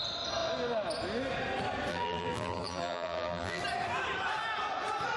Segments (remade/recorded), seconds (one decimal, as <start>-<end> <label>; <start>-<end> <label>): 0.0-1.9 recorded; 1.9-3.6 remade; 3.6-5.2 recorded